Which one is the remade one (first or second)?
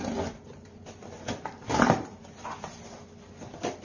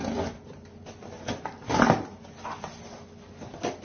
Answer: first